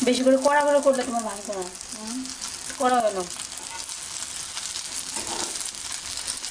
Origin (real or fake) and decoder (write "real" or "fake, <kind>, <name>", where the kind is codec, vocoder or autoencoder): real